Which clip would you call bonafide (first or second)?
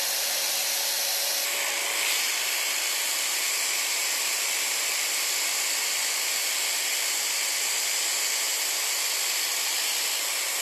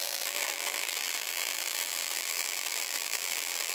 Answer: first